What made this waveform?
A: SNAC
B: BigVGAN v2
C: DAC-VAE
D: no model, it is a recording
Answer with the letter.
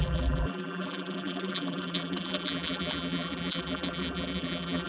B